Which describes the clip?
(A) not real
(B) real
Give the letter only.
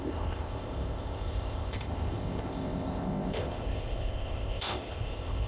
A